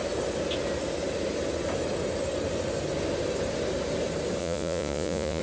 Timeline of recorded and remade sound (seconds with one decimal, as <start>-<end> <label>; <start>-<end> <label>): 0.0-4.4 recorded; 4.4-5.4 remade